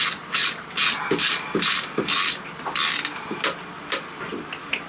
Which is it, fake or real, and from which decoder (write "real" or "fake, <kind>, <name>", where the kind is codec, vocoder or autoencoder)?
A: fake, vocoder, BigVGAN v2